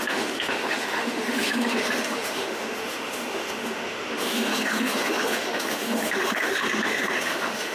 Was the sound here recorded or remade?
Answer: remade